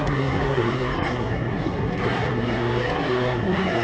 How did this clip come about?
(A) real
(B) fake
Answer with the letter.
B